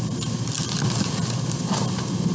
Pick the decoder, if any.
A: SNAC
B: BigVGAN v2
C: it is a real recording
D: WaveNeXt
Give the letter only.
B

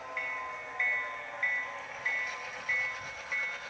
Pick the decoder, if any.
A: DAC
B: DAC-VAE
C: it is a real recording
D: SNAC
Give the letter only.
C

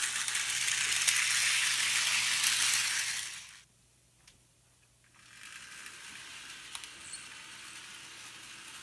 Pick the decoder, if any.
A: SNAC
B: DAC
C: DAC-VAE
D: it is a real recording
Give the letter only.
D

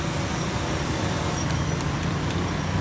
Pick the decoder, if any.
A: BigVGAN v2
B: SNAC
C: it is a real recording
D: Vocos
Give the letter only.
C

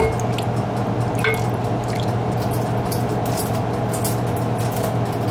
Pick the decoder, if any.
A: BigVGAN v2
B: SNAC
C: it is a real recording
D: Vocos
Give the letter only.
C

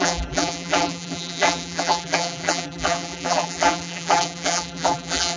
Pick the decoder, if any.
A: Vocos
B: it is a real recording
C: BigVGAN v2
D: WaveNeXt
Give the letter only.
C